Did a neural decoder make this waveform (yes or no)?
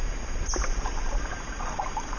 no